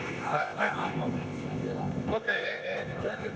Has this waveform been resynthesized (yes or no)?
yes